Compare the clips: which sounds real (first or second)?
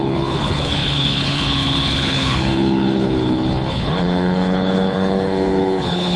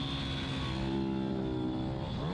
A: second